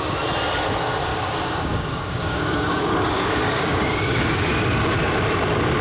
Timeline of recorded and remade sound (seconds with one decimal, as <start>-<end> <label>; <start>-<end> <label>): 0.0-1.1 recorded; 1.1-4.5 remade; 4.5-5.8 recorded